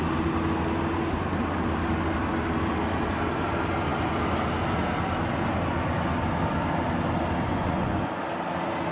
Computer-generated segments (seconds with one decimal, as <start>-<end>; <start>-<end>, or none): 7.5-8.3